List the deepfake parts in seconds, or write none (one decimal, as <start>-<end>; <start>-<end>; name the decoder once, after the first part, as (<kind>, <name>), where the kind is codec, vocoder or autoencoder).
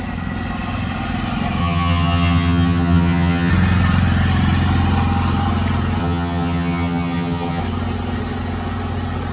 1.6-3.5 (vocoder, HiFi-GAN); 6.0-7.6